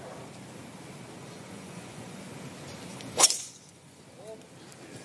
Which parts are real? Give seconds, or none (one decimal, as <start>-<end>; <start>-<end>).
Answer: 0.0-1.2; 2.2-2.9; 4.0-5.0